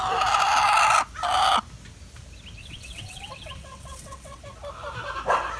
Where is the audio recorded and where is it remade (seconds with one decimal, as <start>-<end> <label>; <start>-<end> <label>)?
0.0-2.6 recorded; 2.6-4.4 remade; 4.4-5.6 recorded